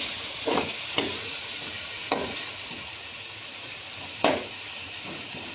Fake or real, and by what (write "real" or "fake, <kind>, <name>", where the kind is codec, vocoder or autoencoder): fake, vocoder, Vocos